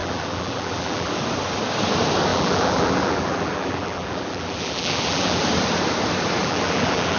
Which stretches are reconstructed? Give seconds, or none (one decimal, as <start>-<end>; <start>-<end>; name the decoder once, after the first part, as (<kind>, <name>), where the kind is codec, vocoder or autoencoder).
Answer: 0.0-1.2 (vocoder, BigVGAN v2); 2.3-5.4; 6.4-7.2

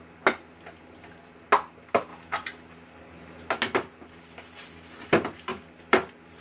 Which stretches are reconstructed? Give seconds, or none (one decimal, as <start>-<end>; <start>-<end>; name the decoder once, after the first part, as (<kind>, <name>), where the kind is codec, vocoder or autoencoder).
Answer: 2.1-3.5 (vocoder, BigVGAN v2); 5.5-6.4

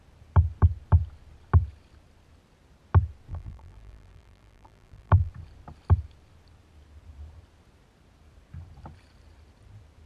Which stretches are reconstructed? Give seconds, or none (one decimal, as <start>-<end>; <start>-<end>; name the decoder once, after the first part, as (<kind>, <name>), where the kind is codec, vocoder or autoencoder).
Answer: 3.3-5.3 (vocoder, BigVGAN v2)

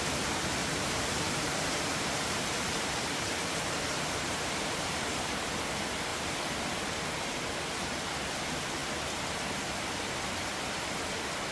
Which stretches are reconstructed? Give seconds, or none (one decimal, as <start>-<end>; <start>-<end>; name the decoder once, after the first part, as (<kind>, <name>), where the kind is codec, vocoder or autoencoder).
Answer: 0.6-5.5 (vocoder, BigVGAN v2); 6.1-7.0

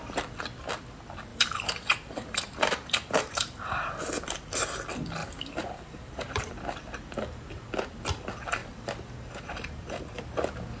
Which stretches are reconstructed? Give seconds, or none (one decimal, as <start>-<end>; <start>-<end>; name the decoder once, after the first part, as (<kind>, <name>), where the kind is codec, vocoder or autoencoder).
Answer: 1.3-3.9 (vocoder, BigVGAN v2); 5.2-6.4; 8.6-10.0